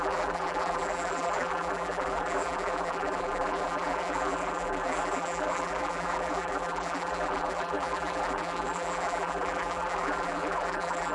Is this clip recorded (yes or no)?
no